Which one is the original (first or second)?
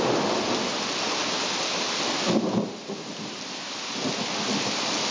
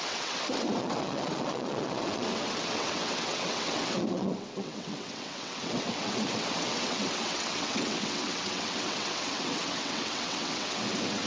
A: first